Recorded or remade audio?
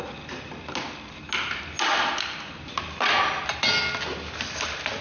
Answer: recorded